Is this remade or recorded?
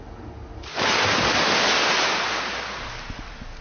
recorded